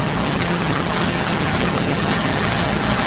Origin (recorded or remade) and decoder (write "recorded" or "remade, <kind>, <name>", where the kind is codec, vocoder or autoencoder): remade, vocoder, HiFi-GAN